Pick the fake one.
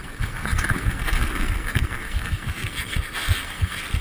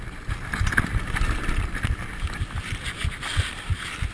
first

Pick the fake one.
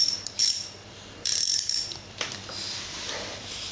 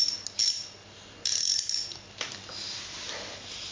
first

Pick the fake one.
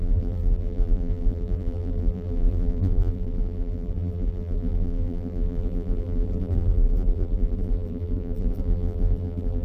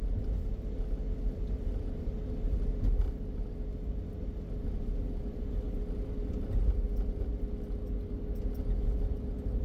first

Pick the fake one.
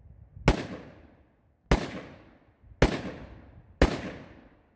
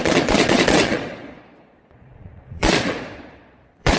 second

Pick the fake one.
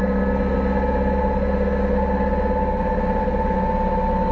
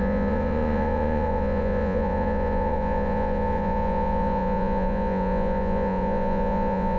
second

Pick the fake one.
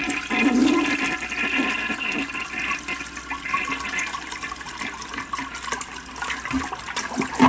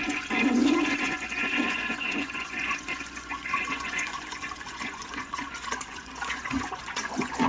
second